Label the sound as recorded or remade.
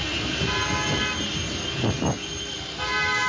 recorded